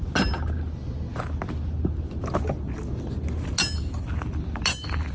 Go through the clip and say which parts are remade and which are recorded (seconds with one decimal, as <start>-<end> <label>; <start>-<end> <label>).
0.0-5.1 recorded

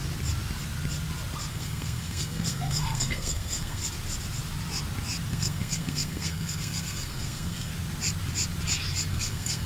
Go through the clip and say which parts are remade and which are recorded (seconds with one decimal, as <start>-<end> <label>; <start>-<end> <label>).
0.0-1.5 recorded; 1.5-3.8 remade; 3.8-5.3 recorded; 5.3-7.7 remade; 7.7-9.1 recorded; 9.1-9.7 remade

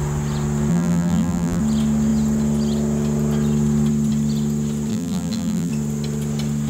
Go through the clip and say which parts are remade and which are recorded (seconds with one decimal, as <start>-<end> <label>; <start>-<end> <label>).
0.0-0.7 recorded; 0.7-1.6 remade; 1.6-4.9 recorded; 4.9-5.7 remade; 5.7-6.7 recorded

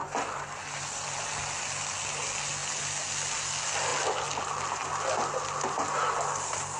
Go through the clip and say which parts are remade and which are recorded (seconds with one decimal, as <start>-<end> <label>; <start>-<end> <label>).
0.0-1.3 remade; 1.3-6.8 recorded

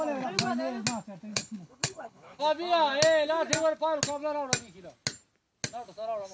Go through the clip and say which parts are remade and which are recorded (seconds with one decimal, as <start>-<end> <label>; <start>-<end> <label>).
0.0-1.3 recorded; 1.3-2.4 remade; 2.4-6.3 recorded

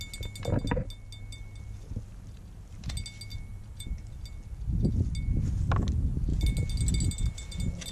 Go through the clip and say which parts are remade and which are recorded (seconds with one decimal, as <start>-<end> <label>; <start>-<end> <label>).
0.0-3.3 recorded; 3.3-4.1 remade; 4.1-7.9 recorded

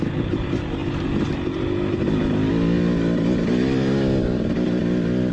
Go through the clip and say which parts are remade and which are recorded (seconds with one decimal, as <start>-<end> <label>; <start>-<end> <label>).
0.0-5.3 recorded

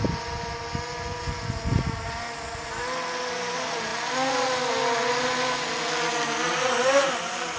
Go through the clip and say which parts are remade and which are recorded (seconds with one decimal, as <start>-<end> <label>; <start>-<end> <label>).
0.0-7.6 recorded